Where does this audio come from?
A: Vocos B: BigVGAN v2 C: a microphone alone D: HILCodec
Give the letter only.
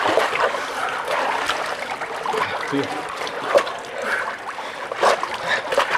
B